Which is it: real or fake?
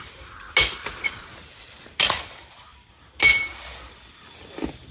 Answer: real